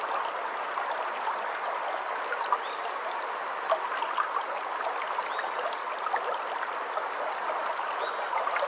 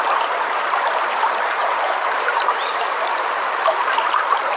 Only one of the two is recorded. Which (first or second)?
first